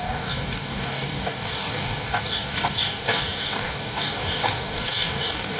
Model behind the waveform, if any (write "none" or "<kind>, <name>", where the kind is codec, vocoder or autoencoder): codec, DAC